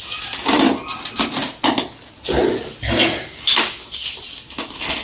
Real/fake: real